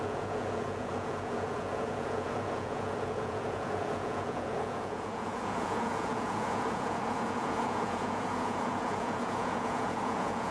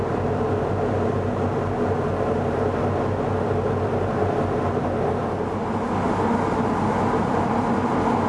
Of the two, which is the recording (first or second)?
second